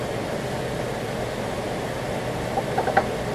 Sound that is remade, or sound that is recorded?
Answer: remade